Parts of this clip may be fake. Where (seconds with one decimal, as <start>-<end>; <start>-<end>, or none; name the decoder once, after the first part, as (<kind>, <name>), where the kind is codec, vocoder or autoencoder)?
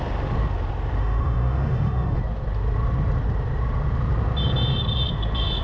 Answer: 1.0-2.2 (autoencoder, DAC-VAE)